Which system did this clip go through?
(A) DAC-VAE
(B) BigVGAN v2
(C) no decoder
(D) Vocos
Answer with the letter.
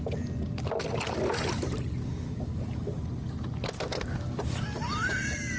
C